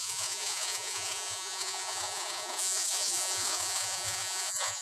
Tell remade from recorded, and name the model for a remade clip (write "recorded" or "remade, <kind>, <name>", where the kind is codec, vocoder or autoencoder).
remade, vocoder, Vocos